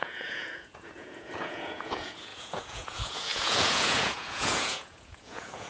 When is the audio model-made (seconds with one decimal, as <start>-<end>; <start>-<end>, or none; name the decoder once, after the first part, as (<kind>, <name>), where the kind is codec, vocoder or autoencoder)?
0.0-5.7 (vocoder, Vocos)